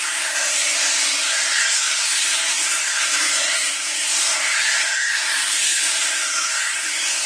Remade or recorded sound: remade